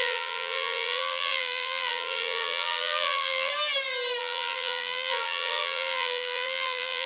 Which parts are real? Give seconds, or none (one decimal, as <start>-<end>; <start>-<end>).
3.5-4.2